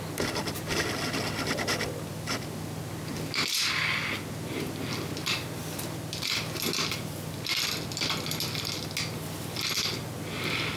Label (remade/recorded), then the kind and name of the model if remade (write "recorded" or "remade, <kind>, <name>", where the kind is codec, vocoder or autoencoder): recorded